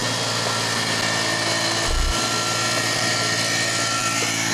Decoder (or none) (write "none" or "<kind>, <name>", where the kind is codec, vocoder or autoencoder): none